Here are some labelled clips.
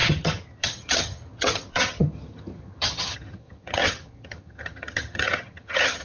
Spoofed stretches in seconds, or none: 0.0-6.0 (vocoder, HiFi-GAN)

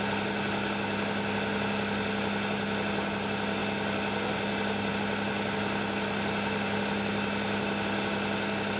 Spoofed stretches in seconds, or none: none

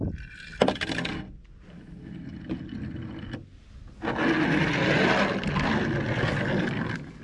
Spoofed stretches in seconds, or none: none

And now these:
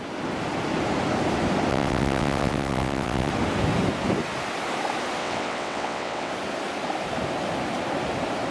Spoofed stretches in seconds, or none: 1.7-3.3 (vocoder, WaveNeXt); 5.2-6.3